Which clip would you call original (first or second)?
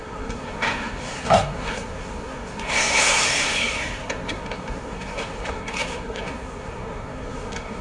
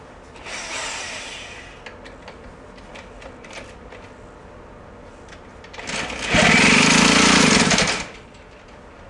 second